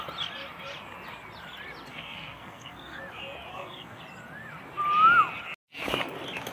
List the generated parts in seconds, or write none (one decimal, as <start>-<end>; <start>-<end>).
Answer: 1.9-3.0; 3.5-4.0

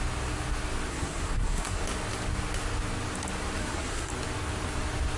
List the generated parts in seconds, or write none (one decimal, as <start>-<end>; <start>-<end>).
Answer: 0.9-1.8; 3.6-4.1

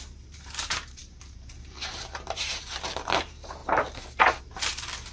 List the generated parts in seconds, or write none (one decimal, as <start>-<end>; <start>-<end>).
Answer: 0.0-3.6; 4.4-5.1